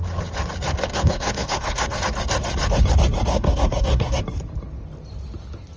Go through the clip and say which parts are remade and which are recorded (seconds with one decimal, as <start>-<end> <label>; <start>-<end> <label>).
0.0-0.9 recorded; 0.9-2.0 remade; 2.0-3.3 recorded; 3.3-4.2 remade; 4.2-5.8 recorded